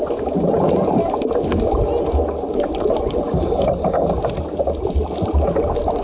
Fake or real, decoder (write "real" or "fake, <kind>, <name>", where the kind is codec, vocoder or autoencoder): real